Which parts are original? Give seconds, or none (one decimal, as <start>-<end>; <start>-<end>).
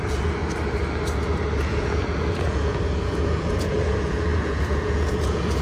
0.4-1.6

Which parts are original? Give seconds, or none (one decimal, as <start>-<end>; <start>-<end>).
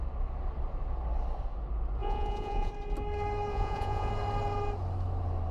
0.0-2.0; 2.7-3.5; 4.1-5.5